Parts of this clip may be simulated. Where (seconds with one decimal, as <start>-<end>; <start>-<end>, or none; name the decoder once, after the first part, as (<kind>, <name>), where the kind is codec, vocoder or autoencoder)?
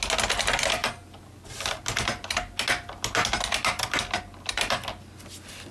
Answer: none